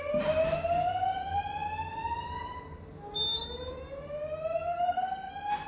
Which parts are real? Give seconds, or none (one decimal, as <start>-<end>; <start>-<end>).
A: 0.0-4.7; 5.3-5.7